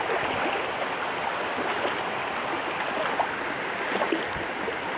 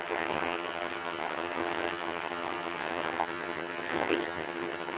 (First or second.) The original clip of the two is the first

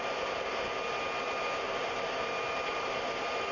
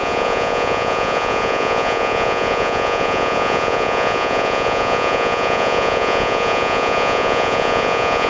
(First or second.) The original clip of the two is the first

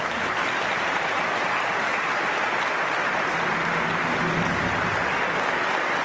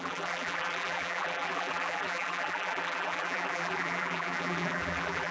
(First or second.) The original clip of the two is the first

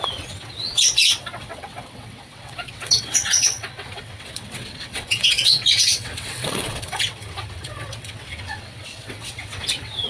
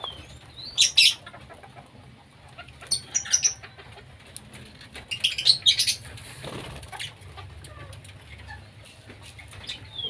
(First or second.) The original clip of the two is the second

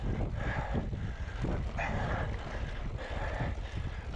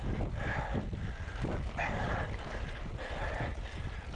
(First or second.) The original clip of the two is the first